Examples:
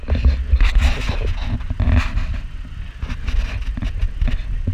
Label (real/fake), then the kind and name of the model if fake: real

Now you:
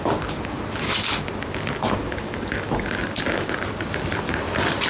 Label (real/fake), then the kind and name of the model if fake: real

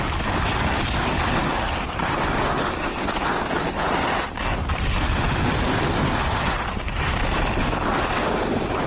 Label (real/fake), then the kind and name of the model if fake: real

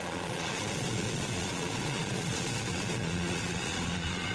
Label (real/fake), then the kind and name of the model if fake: fake, vocoder, Vocos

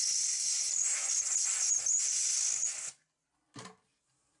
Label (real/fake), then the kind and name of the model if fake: real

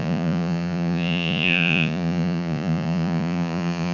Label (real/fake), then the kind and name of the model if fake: fake, vocoder, Vocos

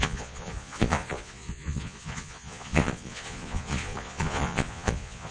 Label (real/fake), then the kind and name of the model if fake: fake, vocoder, Vocos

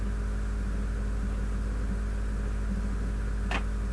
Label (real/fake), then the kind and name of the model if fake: real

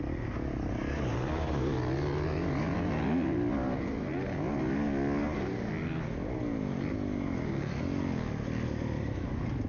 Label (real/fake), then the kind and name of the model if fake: real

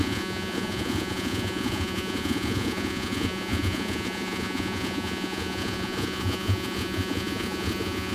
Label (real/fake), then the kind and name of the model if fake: fake, vocoder, Vocos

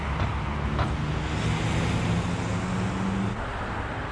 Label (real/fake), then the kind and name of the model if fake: real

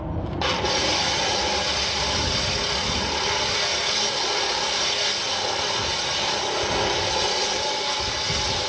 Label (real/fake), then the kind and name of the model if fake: real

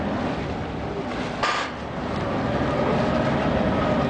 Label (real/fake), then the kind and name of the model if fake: real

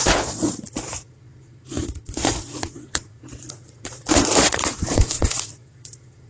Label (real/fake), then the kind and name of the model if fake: fake, vocoder, Vocos